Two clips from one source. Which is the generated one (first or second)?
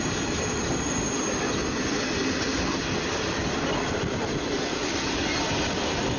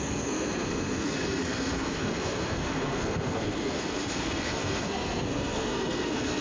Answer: second